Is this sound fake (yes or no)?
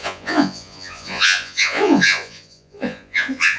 yes